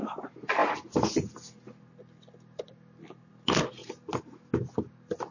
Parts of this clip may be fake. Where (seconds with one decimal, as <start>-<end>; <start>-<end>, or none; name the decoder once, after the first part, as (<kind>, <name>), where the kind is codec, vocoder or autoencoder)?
none